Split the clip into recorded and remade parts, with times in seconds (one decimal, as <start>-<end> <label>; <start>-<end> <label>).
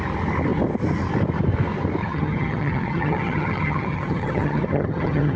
0.0-2.0 recorded; 2.0-5.4 remade